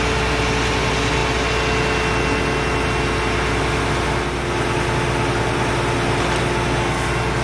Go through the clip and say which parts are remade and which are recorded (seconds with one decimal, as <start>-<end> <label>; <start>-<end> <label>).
0.0-7.4 recorded